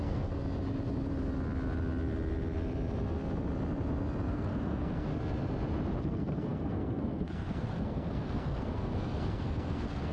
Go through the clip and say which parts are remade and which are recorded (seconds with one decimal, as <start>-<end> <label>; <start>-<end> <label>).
0.0-0.4 remade; 0.4-4.3 recorded; 4.3-5.1 remade; 5.1-6.0 recorded; 6.0-10.1 remade